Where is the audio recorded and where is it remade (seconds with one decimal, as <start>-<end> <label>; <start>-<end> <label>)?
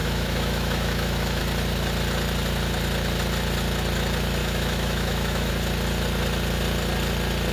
0.0-1.4 remade; 1.4-4.4 recorded; 4.4-5.5 remade; 5.5-7.5 recorded